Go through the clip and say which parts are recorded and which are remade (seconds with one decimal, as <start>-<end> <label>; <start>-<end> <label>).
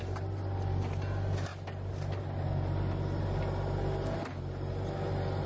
0.0-5.5 recorded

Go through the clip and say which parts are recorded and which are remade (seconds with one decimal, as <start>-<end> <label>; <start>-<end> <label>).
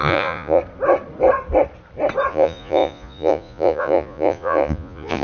0.0-0.6 remade; 0.6-2.3 recorded; 2.3-5.2 remade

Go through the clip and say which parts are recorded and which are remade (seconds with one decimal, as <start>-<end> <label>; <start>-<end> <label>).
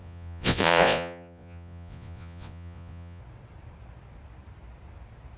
0.0-3.2 remade; 3.2-5.4 recorded